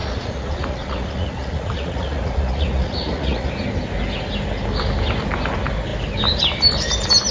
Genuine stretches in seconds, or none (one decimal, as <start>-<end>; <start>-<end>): 3.5-7.3